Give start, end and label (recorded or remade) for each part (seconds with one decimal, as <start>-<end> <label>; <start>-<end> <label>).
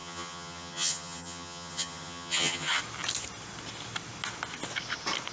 0.0-2.8 remade; 2.8-5.3 recorded